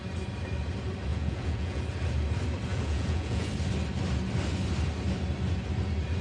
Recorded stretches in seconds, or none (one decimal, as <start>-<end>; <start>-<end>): 0.0-1.1; 1.8-2.7; 3.5-6.2